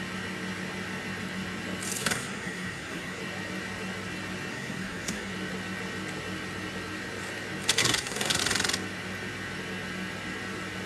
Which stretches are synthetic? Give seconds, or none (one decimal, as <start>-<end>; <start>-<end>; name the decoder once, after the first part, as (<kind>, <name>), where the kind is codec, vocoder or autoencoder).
2.0-3.2 (codec, SNAC); 4.5-5.3; 7.8-8.4